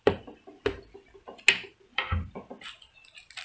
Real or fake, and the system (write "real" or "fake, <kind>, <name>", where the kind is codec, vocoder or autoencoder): real